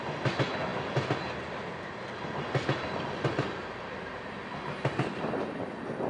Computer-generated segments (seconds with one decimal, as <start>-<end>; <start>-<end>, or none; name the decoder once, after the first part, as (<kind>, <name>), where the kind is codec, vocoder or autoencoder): none